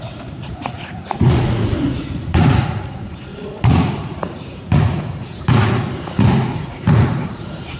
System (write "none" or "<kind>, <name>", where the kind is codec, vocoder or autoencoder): vocoder, Vocos